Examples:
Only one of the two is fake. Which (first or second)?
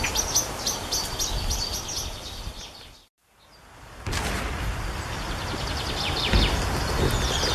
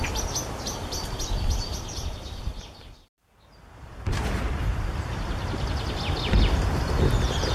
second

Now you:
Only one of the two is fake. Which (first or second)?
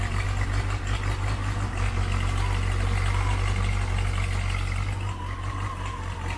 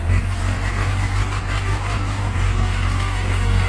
second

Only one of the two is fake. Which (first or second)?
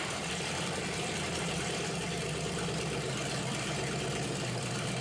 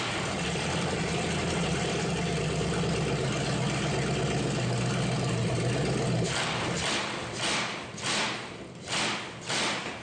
first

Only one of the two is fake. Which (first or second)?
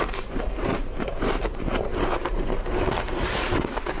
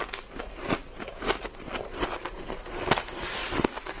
first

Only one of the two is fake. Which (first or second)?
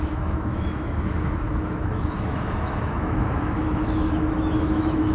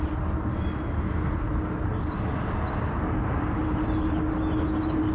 first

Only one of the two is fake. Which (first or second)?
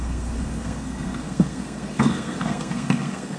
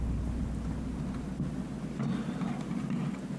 first